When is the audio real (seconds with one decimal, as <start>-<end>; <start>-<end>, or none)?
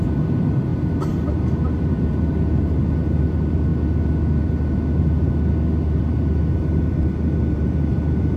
3.7-5.0